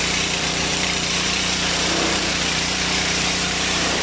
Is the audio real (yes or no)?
no